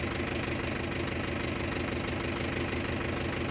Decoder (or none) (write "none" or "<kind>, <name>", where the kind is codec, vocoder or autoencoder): none